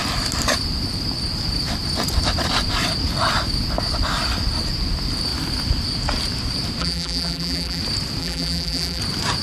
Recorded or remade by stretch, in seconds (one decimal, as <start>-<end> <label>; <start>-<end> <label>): 0.0-6.8 recorded; 6.8-7.8 remade; 7.8-8.2 recorded; 8.2-9.0 remade; 9.0-9.4 recorded